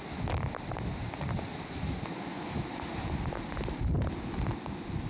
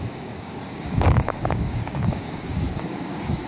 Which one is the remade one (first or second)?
second